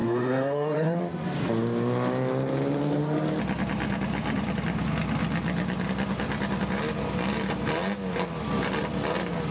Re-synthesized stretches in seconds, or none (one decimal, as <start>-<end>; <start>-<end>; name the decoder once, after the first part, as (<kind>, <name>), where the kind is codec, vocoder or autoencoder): 0.0-1.0 (codec, SNAC)